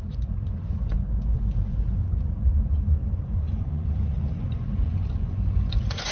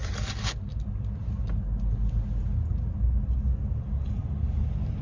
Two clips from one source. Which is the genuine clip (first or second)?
second